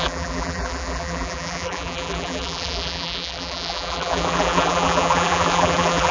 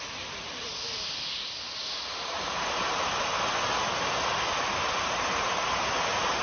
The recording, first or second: second